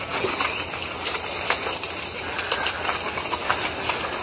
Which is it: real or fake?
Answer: real